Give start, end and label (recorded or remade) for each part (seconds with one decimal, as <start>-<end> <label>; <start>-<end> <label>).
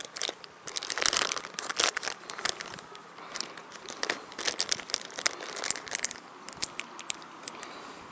0.0-8.1 recorded